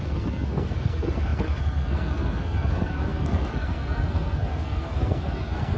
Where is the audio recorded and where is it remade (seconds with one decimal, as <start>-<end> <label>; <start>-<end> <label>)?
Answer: 0.0-5.8 remade